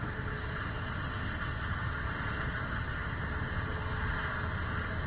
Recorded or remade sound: recorded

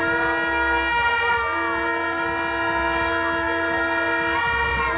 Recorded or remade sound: recorded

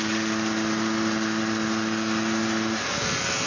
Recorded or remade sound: recorded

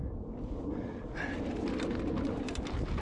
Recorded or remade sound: recorded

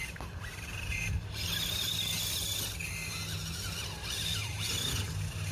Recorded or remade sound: recorded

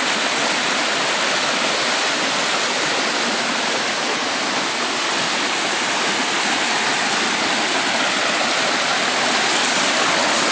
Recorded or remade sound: recorded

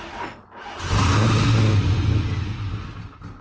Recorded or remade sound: recorded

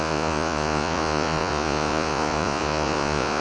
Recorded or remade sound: remade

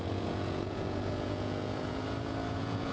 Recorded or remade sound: remade